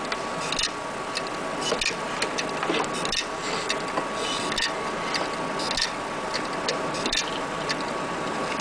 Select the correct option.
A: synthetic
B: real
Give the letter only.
B